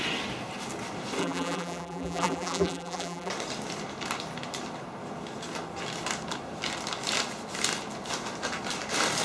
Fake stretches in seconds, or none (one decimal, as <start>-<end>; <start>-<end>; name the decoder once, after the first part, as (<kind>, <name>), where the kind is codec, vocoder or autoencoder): 1.2-3.3 (vocoder, BigVGAN v2)